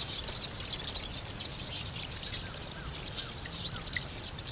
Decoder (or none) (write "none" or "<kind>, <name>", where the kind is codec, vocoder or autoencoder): none